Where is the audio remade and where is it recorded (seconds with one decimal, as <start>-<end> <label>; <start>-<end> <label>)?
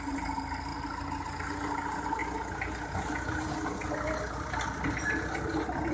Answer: 0.0-5.9 recorded